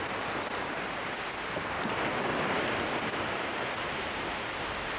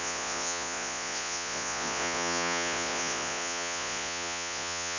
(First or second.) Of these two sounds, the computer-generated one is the second